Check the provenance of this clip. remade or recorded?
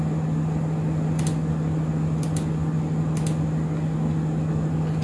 recorded